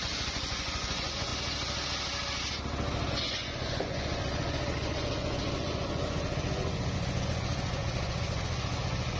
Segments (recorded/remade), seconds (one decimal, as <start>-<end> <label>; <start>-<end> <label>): 0.0-1.3 remade; 1.3-3.1 recorded; 3.1-9.2 remade